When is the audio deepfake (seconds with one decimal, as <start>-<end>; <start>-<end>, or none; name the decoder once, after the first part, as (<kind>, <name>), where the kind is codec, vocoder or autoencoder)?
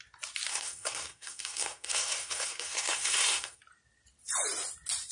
0.5-3.6 (codec, SNAC)